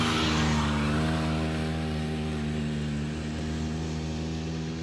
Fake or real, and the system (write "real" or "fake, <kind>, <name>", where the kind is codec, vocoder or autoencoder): real